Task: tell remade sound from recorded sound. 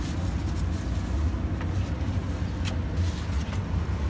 recorded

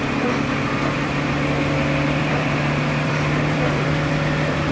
remade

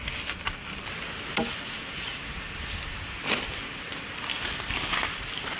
recorded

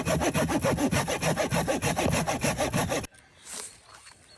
recorded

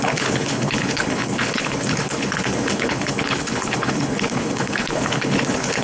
remade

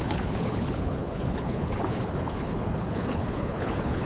remade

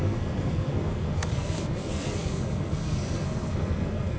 remade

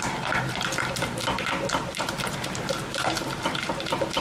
recorded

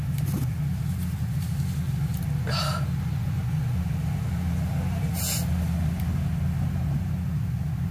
recorded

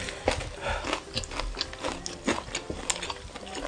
recorded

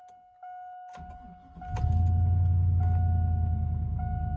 recorded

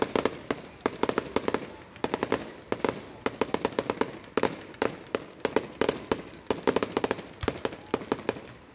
recorded